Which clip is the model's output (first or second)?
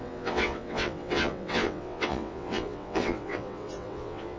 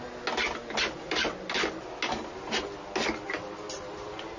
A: first